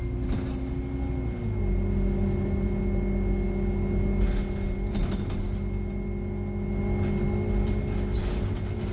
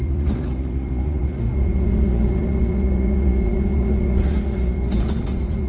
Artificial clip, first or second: second